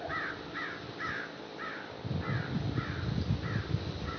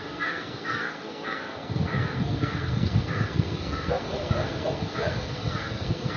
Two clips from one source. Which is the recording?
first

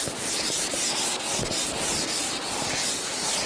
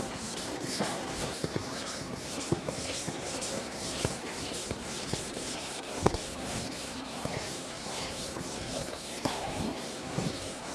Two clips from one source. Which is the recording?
first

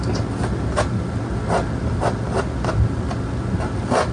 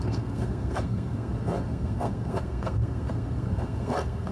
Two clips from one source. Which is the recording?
first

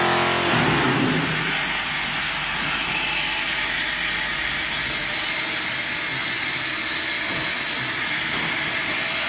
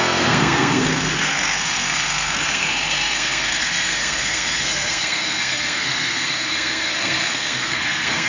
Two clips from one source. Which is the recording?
first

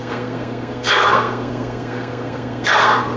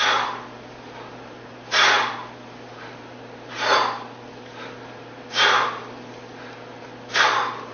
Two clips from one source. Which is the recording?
second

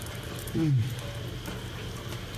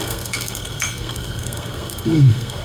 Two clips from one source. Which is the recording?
first